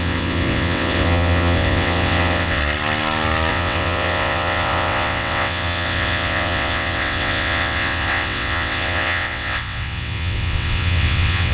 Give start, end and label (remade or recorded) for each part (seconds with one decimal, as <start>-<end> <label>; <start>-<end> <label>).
0.0-2.6 remade; 2.6-3.5 recorded; 3.5-11.5 remade